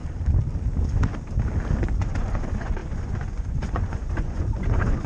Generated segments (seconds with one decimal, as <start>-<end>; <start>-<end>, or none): 1.8-5.1